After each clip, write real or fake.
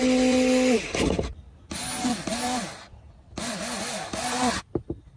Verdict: real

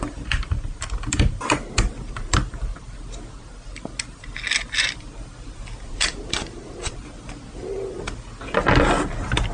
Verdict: real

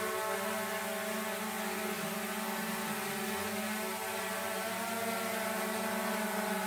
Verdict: real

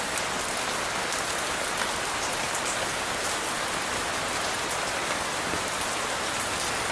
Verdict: real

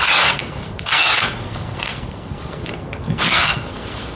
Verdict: fake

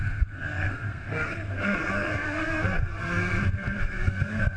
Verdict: fake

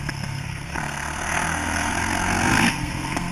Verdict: fake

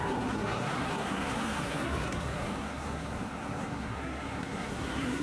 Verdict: fake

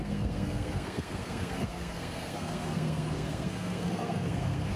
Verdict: fake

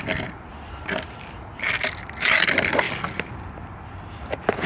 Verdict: real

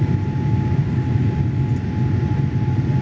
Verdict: real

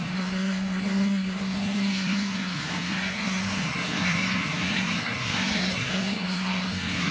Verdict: fake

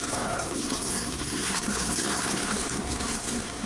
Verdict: fake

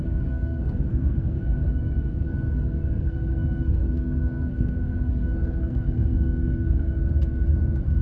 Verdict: fake